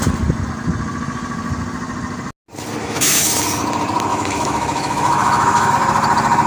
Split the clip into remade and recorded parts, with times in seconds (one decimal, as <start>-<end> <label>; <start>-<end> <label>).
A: 0.0-2.8 recorded; 2.8-3.4 remade; 3.4-4.1 recorded; 4.1-5.7 remade; 5.7-6.5 recorded